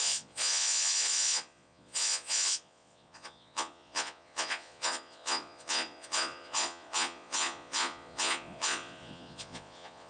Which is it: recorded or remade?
remade